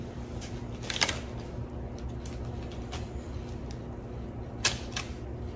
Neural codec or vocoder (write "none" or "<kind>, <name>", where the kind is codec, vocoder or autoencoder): none